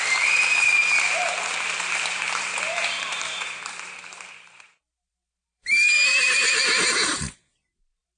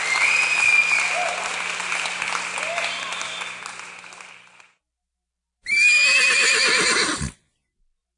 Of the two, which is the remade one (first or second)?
first